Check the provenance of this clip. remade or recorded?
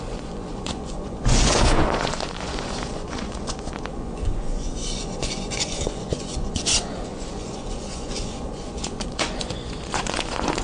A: remade